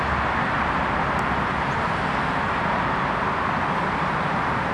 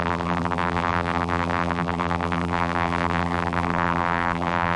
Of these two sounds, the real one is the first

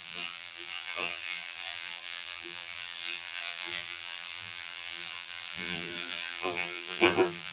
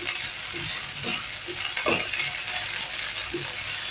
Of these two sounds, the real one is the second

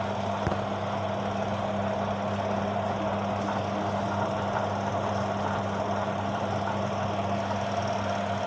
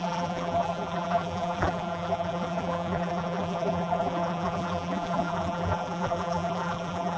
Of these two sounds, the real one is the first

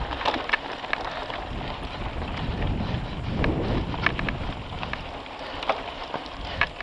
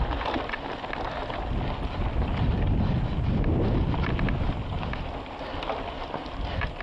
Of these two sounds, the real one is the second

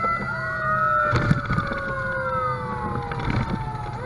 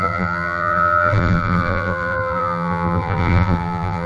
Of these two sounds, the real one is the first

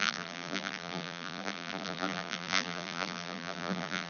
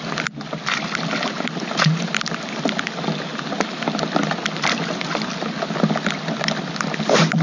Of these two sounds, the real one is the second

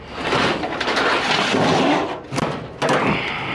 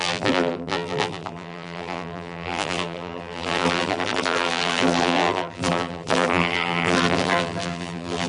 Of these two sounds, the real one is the first